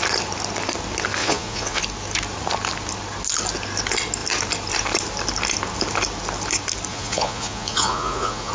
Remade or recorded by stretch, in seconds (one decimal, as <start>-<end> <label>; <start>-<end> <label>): 0.0-1.2 recorded; 1.2-1.8 remade; 1.8-6.9 recorded; 6.9-8.5 remade